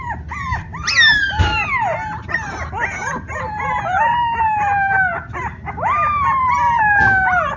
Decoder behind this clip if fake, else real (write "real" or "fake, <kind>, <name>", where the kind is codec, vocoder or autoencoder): real